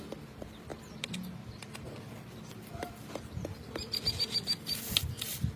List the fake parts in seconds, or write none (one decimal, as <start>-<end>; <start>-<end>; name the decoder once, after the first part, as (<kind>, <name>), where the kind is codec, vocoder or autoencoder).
none